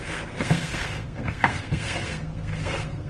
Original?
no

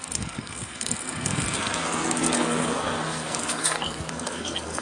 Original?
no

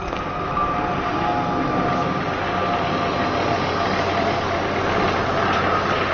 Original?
yes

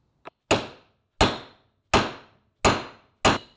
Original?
yes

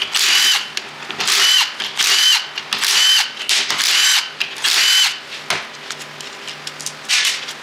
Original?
yes